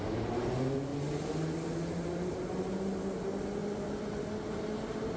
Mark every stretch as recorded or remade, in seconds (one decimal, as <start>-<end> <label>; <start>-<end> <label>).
0.0-5.2 recorded